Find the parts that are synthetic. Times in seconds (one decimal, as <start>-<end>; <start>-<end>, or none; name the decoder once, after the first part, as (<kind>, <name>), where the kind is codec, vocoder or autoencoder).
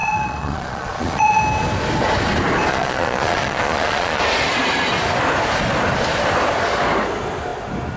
0.0-1.4 (vocoder, Vocos); 2.7-4.2